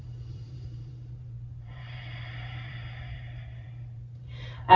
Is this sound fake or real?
fake